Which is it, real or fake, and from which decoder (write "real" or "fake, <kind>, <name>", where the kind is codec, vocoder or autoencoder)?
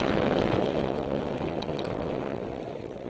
fake, vocoder, WaveNeXt